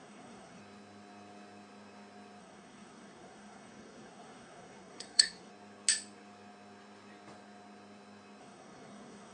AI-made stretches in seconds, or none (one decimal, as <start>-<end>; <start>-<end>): 0.0-0.6; 2.4-5.5; 8.4-9.3